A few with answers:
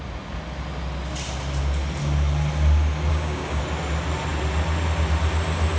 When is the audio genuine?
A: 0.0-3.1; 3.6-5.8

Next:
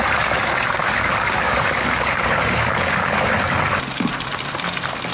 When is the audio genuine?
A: 0.0-0.8; 3.3-5.1

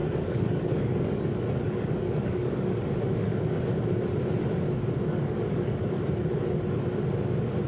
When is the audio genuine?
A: 3.4-5.0; 6.0-7.7

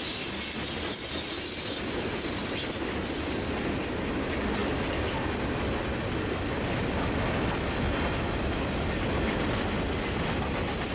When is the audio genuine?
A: 0.0-10.9

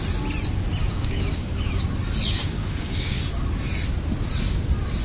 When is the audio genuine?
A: 0.0-0.8; 1.7-2.4; 3.2-5.0

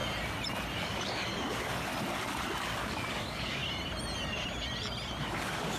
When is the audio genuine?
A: 0.0-0.8; 1.9-2.6; 3.6-5.2